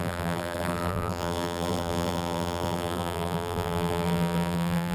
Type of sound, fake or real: fake